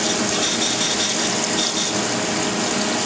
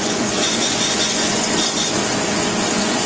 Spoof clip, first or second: second